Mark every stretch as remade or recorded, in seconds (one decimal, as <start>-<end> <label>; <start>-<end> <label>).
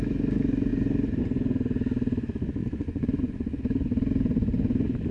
0.0-2.6 recorded; 2.6-3.6 remade; 3.6-5.1 recorded